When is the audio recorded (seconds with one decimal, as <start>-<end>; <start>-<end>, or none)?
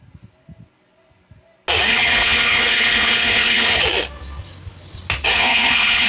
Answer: 0.0-1.9; 3.8-5.3